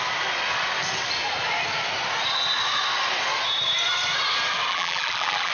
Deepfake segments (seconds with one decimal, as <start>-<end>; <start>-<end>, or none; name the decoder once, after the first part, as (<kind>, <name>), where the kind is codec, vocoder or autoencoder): 4.7-5.5 (vocoder, BigVGAN v2)

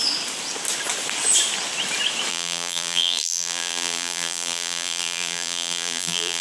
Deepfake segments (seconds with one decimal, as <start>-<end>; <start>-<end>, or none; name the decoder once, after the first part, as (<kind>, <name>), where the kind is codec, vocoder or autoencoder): 2.3-6.4 (vocoder, BigVGAN v2)

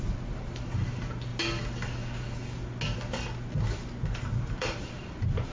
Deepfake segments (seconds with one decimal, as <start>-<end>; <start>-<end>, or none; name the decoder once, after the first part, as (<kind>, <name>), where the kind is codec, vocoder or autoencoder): 0.0-1.3 (vocoder, BigVGAN v2); 4.6-5.5

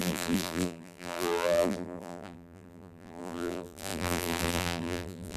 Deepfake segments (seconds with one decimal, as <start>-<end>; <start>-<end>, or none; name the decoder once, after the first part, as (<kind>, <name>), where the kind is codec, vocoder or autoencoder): 0.0-5.4 (vocoder, BigVGAN v2)